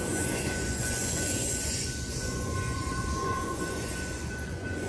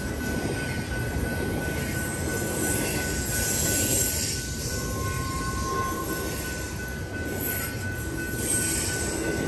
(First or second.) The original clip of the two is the second